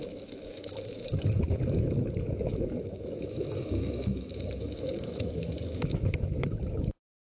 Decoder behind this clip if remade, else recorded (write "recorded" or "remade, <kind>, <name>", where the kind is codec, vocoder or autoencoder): remade, autoencoder, DAC-VAE